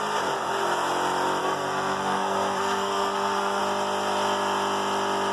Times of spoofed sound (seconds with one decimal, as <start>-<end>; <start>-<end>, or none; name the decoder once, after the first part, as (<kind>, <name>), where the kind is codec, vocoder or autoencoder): 1.4-3.6 (codec, SNAC)